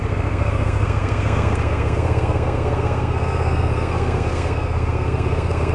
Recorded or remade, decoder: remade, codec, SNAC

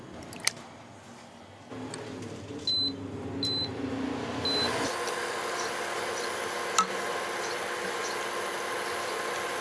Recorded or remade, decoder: recorded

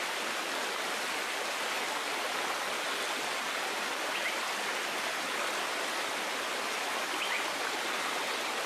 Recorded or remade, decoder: recorded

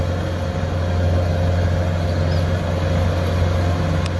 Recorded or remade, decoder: recorded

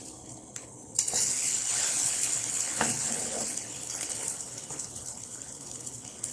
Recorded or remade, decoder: remade, codec, HILCodec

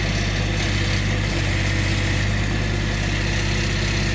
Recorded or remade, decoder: recorded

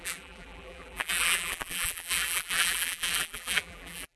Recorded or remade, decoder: remade, vocoder, BigVGAN v2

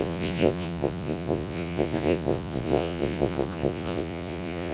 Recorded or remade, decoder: remade, vocoder, Vocos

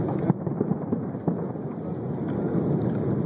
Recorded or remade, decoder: recorded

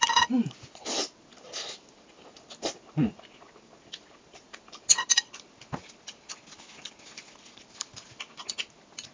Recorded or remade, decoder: recorded